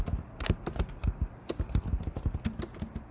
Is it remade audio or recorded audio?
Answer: recorded